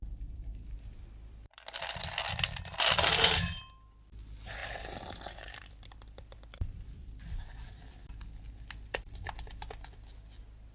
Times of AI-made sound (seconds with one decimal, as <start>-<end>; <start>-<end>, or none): 0.0-2.0; 4.6-7.9